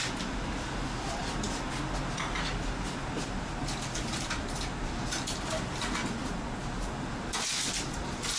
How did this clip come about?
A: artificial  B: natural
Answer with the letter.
B